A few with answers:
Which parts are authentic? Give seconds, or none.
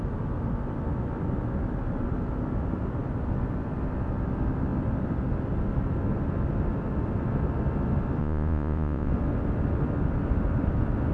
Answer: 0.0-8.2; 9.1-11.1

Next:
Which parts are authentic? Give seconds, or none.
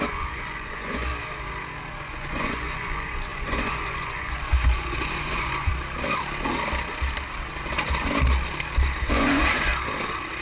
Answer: 1.1-1.9; 5.7-9.1; 9.7-10.4